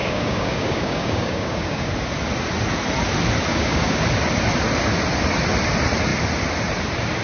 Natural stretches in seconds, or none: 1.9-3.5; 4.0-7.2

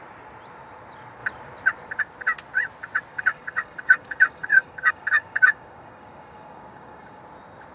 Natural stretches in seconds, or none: 0.0-3.1; 7.2-7.7

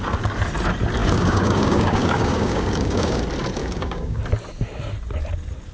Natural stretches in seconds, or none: 0.0-1.0; 3.2-3.6; 4.2-5.7

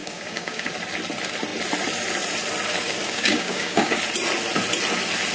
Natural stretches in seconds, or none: 0.7-2.8; 4.0-5.3